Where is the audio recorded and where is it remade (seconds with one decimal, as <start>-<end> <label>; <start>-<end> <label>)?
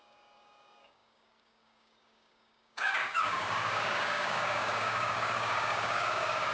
0.0-6.5 remade